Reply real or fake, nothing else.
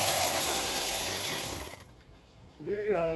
fake